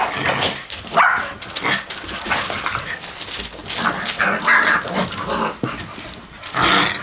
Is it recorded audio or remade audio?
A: recorded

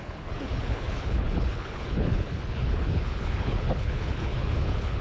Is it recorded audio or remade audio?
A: remade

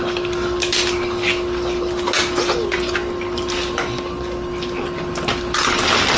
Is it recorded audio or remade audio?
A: recorded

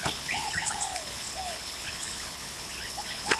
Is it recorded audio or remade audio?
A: remade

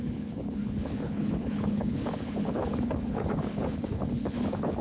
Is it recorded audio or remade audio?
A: remade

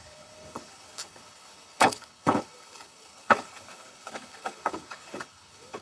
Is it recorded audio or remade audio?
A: remade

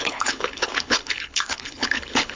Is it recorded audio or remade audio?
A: remade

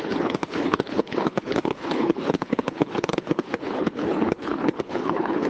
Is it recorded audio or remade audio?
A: remade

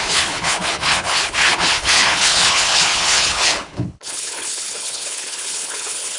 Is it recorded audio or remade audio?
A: remade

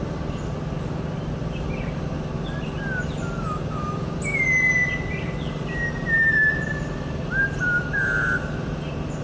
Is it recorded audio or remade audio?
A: recorded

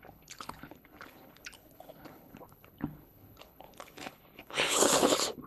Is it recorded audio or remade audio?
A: remade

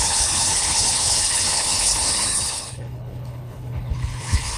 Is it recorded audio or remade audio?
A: remade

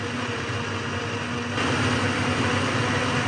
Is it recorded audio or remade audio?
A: recorded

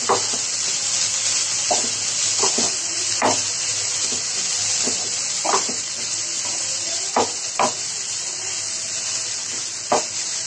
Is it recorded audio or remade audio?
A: recorded